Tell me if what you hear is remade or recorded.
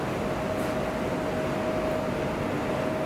recorded